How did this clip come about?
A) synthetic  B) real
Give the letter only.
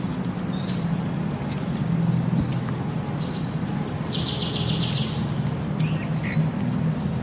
B